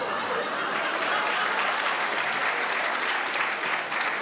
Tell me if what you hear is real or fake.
real